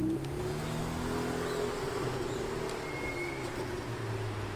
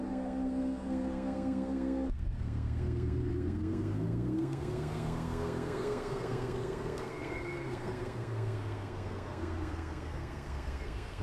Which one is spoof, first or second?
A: second